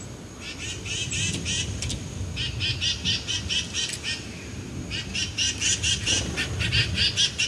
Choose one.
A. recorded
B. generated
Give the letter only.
A